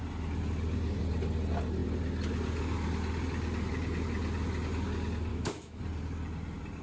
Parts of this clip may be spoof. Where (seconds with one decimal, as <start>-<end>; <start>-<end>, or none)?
5.3-5.8